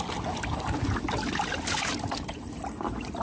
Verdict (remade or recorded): recorded